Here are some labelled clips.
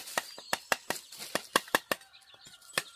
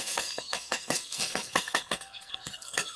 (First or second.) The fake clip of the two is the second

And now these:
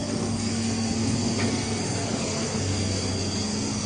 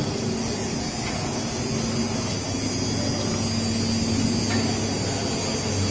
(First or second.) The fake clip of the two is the first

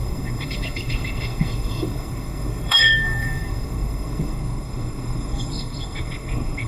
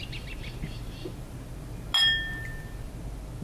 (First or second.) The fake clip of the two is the first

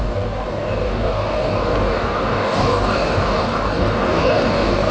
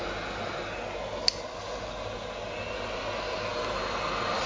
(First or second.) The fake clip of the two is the first